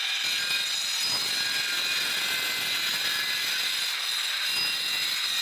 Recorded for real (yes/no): yes